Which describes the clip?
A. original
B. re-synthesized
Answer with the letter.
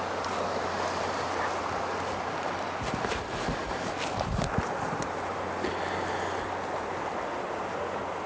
A